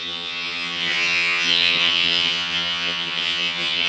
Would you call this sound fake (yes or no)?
yes